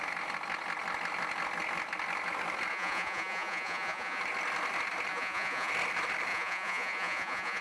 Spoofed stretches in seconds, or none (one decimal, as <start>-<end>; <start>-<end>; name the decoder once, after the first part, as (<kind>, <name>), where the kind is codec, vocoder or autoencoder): 2.7-4.2 (vocoder, Vocos); 5.1-5.7; 6.3-7.6